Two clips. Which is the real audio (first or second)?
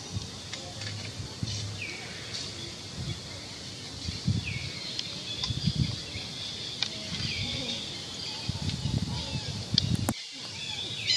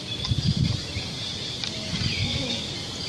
first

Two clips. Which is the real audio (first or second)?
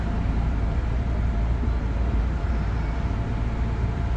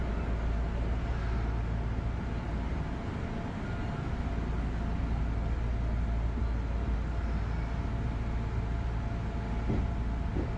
second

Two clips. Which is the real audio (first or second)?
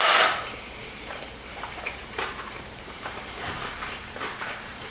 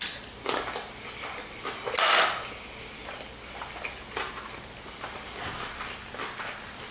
second